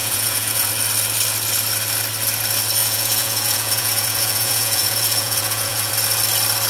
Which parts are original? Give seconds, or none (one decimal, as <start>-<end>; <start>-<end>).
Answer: 0.7-2.8; 5.9-6.7